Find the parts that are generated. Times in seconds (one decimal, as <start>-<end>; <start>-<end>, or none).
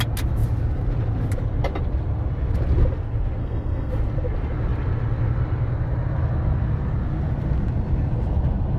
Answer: 3.4-3.9